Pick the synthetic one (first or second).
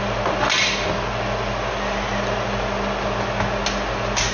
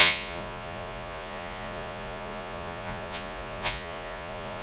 second